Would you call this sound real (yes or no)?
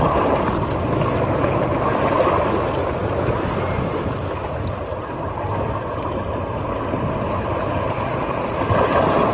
yes